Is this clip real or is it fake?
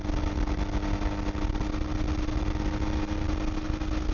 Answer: real